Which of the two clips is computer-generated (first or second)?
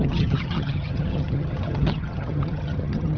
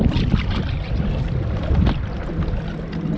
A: first